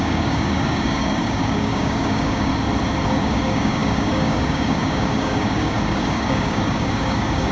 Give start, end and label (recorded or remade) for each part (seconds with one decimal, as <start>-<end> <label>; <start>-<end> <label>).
0.0-2.5 remade; 2.5-3.1 recorded; 3.1-7.5 remade